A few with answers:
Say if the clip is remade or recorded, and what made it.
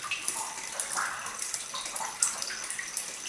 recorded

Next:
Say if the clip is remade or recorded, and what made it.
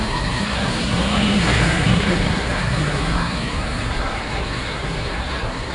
remade, codec, SNAC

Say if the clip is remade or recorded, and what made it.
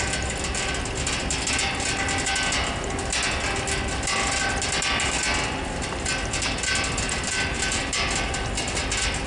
recorded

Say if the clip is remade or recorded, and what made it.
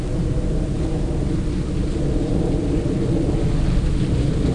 recorded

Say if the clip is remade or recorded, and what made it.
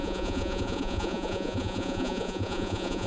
remade, vocoder, Vocos